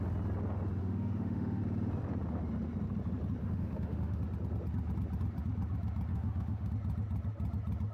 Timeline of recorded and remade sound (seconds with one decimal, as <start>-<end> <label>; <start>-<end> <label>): 0.0-0.8 recorded; 0.8-1.6 remade; 1.6-3.4 recorded; 3.4-4.2 remade; 4.2-6.1 recorded; 6.1-6.7 remade; 6.7-7.9 recorded

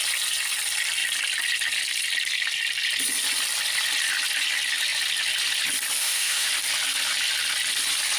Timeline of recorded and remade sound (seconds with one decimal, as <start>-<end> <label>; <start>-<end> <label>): 0.0-6.0 recorded; 6.0-6.5 remade; 6.5-8.2 recorded

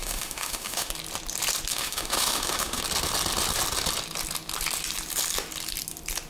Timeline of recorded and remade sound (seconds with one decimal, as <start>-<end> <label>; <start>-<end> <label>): 0.0-0.9 remade; 0.9-1.7 recorded; 1.7-2.8 remade; 2.8-6.3 recorded

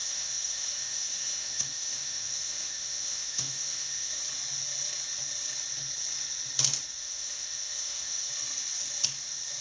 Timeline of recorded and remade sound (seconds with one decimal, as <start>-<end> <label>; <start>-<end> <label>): 0.0-4.2 remade; 4.2-7.0 recorded; 7.0-8.3 remade; 8.3-9.6 recorded

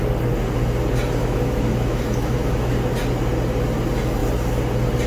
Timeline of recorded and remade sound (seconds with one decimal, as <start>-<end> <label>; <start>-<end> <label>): 0.0-1.2 recorded; 1.2-2.7 remade; 2.7-5.1 recorded

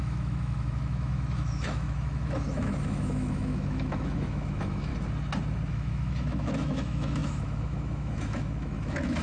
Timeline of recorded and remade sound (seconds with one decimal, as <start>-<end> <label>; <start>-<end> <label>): 0.0-4.9 remade; 4.9-5.7 recorded; 5.7-9.2 remade

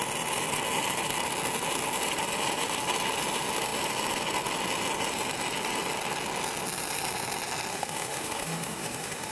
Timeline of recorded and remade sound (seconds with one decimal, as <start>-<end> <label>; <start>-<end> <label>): 0.0-7.7 recorded; 7.7-9.3 remade

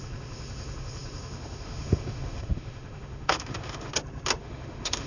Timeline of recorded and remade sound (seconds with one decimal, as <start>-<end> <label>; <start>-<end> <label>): 0.0-3.9 remade; 3.9-4.4 recorded; 4.4-5.1 remade